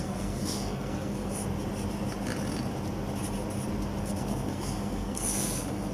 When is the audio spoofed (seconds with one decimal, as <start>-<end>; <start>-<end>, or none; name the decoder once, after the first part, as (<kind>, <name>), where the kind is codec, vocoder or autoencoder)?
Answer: 0.0-1.4 (codec, SNAC); 4.0-5.9